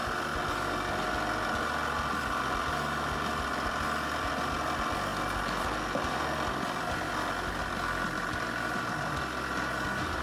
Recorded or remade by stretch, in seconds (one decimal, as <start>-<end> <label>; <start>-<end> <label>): 0.0-10.2 recorded